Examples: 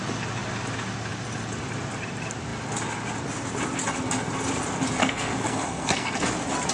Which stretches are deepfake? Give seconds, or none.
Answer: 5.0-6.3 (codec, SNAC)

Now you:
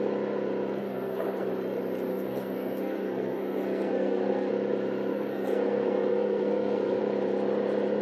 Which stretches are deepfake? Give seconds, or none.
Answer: 0.8-1.5 (codec, SNAC); 2.1-4.5; 5.1-7.0

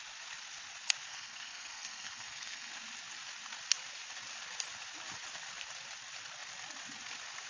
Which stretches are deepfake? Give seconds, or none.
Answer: 1.1-2.7 (codec, SNAC)

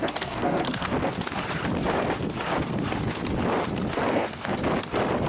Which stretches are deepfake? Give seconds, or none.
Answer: 0.0-0.9 (codec, SNAC); 4.1-4.6

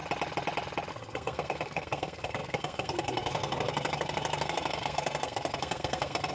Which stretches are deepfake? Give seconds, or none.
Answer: 0.9-6.3 (codec, SNAC)